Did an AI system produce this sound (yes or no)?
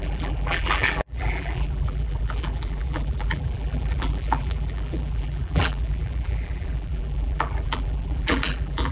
yes